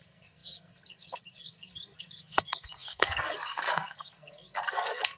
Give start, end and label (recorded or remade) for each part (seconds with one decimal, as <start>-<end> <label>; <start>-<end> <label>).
0.0-5.2 remade